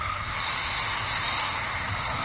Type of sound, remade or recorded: recorded